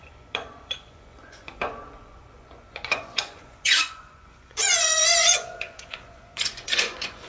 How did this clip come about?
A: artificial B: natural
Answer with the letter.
A